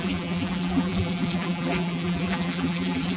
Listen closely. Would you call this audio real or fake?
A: fake